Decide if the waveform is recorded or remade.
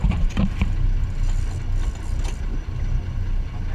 recorded